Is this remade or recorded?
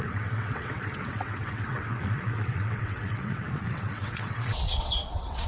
remade